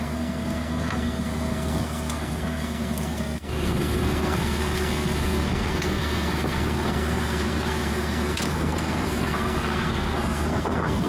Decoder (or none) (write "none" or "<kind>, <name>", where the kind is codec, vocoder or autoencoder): codec, SNAC